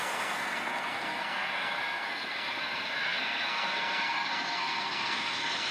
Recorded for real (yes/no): no